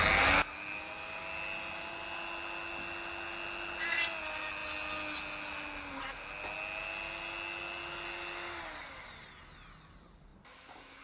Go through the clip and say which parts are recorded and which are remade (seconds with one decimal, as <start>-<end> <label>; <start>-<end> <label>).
0.0-11.0 recorded